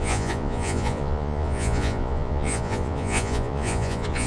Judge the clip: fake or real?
fake